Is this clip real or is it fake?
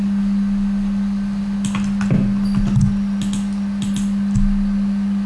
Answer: real